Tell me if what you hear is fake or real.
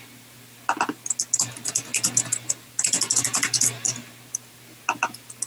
real